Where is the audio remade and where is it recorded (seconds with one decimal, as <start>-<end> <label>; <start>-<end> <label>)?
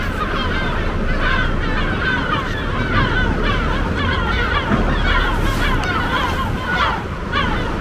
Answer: 0.0-0.4 recorded; 0.4-0.9 remade; 0.9-7.8 recorded